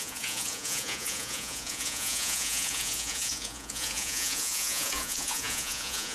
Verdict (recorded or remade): remade